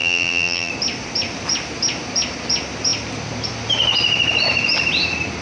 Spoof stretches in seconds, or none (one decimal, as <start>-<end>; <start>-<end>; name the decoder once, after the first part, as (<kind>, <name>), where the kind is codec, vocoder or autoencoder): 0.0-0.7 (vocoder, BigVGAN v2)